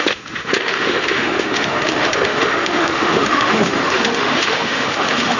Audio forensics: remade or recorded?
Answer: remade